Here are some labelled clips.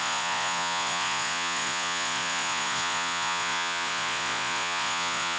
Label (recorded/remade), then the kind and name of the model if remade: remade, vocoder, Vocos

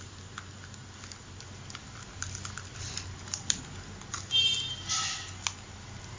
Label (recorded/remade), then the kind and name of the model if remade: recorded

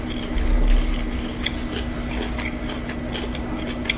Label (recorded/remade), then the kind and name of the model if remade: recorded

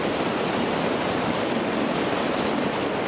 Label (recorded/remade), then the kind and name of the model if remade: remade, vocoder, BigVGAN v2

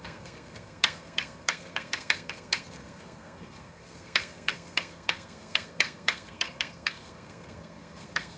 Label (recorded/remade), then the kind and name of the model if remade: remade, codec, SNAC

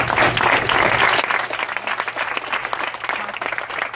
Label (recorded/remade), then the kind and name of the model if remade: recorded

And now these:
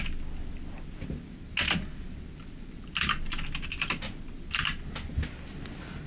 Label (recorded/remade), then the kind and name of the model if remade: recorded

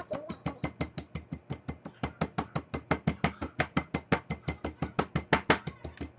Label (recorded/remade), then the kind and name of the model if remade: recorded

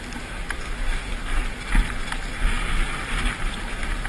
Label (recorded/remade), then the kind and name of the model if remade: recorded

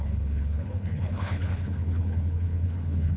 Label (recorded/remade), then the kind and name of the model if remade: remade, codec, HILCodec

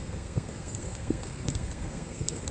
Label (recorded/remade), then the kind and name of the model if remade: remade, codec, SNAC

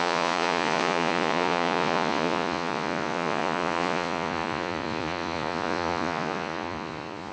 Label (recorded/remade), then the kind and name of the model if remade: remade, vocoder, Vocos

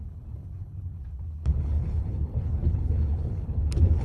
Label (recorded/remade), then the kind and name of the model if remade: remade, codec, HILCodec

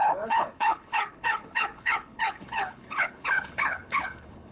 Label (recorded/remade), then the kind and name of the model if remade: remade, codec, HILCodec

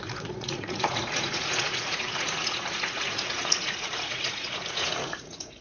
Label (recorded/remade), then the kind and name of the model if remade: remade, vocoder, Vocos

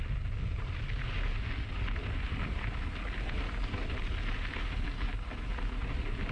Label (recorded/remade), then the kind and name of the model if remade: recorded